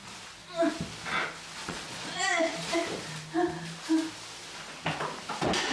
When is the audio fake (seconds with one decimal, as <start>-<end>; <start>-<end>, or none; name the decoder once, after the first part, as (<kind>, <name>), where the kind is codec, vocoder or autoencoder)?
1.6-2.7 (vocoder, Vocos)